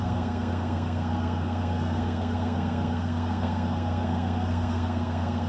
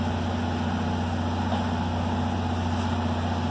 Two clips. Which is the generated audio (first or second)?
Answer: first